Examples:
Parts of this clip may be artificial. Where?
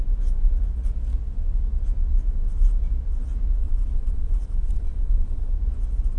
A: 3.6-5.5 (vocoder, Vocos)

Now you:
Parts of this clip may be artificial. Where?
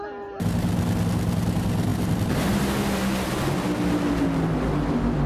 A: none